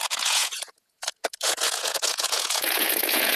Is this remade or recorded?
remade